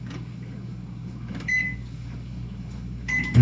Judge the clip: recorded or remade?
remade